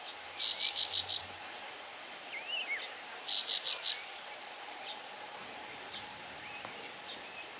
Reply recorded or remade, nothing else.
recorded